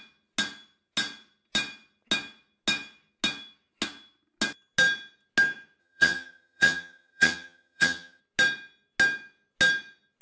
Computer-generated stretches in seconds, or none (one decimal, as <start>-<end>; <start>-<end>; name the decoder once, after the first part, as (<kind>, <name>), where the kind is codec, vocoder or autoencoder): 5.8-8.2 (vocoder, HiFi-GAN)